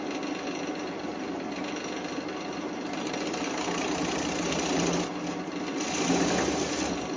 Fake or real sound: real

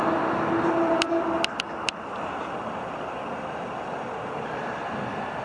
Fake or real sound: real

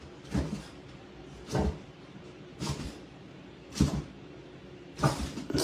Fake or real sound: fake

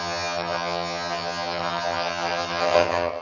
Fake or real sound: fake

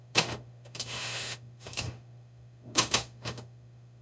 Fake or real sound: fake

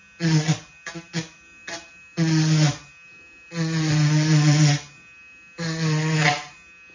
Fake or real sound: real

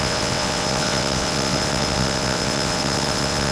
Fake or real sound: fake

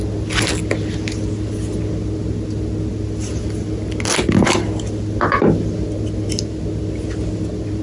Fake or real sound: real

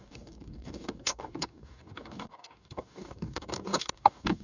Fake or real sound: fake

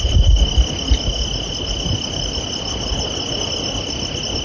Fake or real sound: real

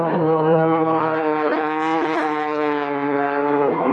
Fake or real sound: fake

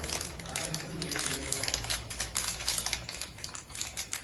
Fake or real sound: fake